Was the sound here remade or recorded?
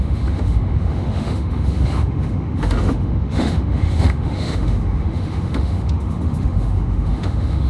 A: remade